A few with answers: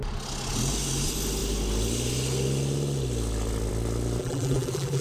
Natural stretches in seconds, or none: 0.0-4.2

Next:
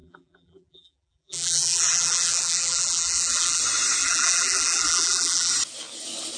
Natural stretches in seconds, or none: 3.6-4.0; 5.5-6.4

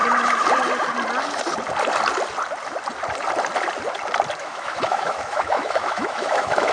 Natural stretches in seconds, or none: 0.0-4.4

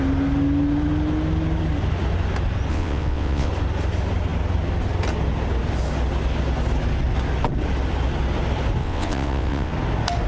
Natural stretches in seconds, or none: 0.0-2.7; 3.5-8.8; 9.7-10.3

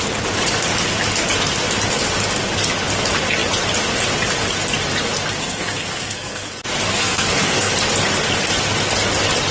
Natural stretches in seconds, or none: 0.0-5.4; 6.5-6.9; 7.7-9.5